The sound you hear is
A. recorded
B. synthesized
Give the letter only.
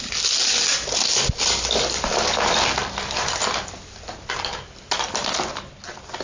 A